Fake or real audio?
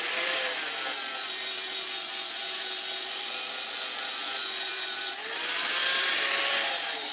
real